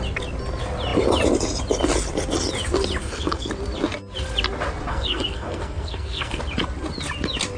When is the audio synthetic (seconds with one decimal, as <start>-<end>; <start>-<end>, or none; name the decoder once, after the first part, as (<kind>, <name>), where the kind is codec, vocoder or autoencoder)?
3.0-3.5 (codec, SNAC); 4.9-6.4